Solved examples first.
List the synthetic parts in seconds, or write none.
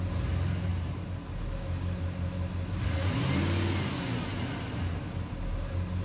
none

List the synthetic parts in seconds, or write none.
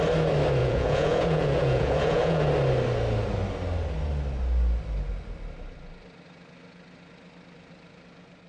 0.6-2.4 (vocoder, Vocos)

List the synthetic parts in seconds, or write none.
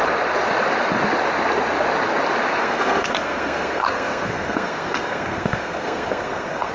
2.6-6.7 (codec, SNAC)